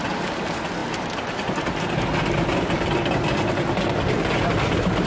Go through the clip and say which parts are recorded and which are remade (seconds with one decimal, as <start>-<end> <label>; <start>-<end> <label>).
0.0-5.1 recorded